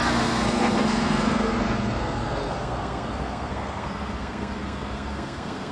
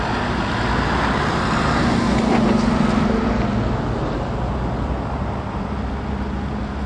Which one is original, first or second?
second